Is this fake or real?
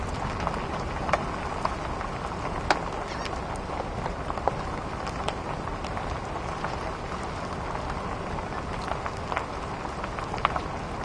real